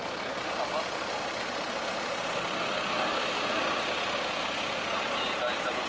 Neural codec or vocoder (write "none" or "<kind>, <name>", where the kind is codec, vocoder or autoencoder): none